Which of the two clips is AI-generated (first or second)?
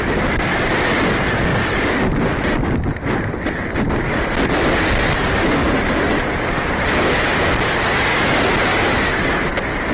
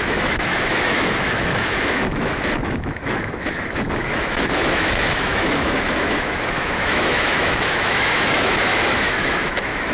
second